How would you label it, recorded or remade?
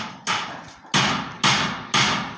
recorded